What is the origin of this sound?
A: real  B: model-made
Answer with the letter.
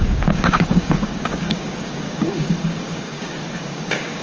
B